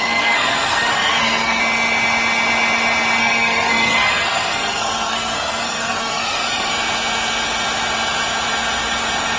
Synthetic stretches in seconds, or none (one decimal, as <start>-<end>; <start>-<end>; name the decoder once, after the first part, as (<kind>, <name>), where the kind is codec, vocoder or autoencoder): 0.0-1.6 (codec, SNAC); 3.2-6.7